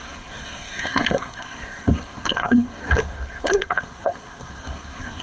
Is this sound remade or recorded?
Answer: remade